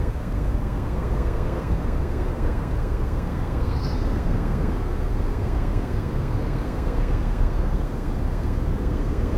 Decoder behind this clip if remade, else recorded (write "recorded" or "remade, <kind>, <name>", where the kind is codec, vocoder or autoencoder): remade, codec, SNAC